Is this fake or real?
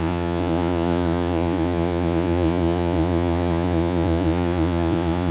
fake